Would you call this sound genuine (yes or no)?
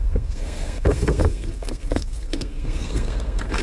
no